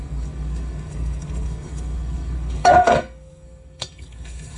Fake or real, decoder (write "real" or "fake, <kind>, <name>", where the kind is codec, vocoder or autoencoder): fake, codec, SNAC